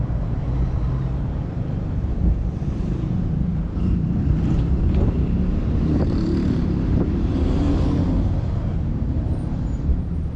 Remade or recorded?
remade